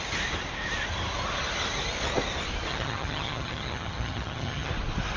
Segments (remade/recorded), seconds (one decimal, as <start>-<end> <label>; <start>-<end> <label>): 0.0-2.7 recorded; 2.7-4.7 remade; 4.7-5.2 recorded